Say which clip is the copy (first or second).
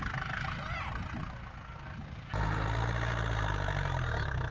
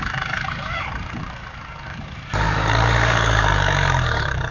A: second